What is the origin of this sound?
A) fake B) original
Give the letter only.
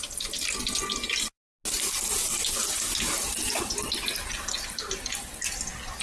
B